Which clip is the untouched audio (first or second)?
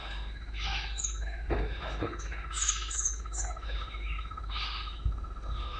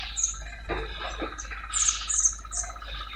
second